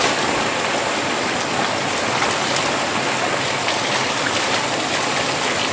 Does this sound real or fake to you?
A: real